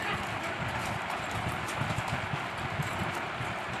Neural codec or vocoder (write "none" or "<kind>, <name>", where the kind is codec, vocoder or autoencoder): none